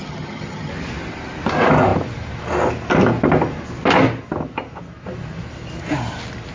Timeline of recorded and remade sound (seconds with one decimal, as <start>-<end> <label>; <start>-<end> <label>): 0.0-0.7 remade; 0.7-6.5 recorded